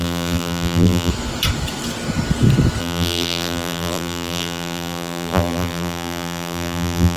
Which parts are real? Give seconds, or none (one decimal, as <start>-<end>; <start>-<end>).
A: 1.1-2.8